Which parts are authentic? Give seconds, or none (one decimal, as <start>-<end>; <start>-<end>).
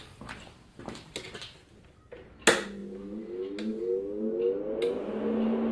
0.0-5.7